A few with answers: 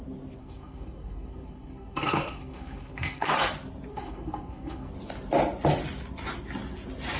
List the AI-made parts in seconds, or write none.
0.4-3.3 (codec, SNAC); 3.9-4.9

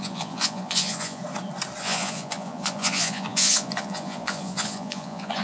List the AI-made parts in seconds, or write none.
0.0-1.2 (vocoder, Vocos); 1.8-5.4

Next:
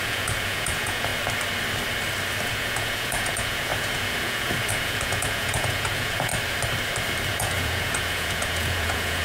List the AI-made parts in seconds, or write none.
0.0-1.1 (vocoder, Vocos); 2.4-6.3; 7.3-9.2

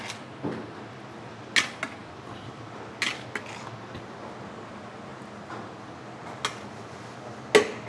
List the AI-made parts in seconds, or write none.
2.0-2.6 (vocoder, BigVGAN v2)

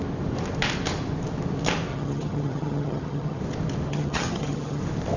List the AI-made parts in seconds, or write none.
1.9-3.4 (vocoder, HiFi-GAN); 3.9-4.8

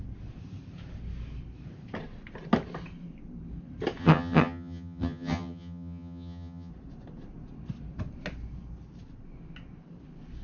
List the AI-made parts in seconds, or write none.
4.0-6.7 (vocoder, HiFi-GAN)

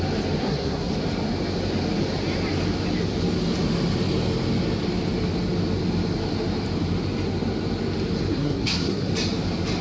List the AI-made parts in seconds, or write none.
0.4-0.9 (codec, SNAC); 8.3-9.1

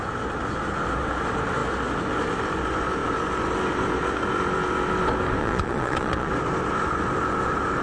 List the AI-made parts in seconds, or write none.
5.4-6.3 (vocoder, Vocos)